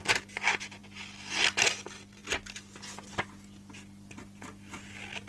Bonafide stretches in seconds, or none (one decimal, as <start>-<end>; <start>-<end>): 0.0-5.3